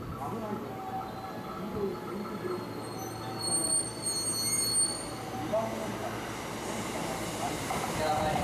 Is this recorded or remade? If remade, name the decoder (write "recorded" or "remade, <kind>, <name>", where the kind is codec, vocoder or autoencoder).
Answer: recorded